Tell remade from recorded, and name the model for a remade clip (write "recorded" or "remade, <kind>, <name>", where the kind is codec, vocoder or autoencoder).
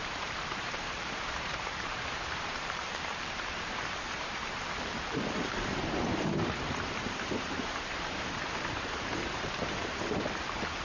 remade, vocoder, BigVGAN v2